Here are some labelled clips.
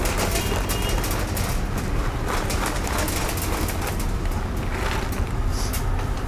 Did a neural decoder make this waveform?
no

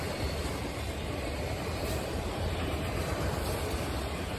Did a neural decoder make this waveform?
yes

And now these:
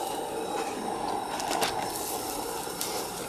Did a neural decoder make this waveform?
no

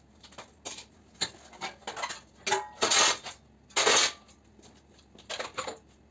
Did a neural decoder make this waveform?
no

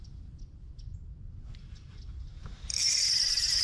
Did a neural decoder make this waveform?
no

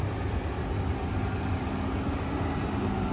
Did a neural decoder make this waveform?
no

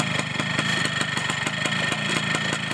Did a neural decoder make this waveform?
no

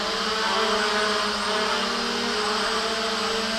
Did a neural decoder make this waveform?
no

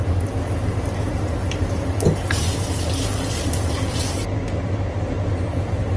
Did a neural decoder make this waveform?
no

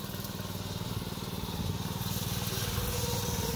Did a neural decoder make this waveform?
no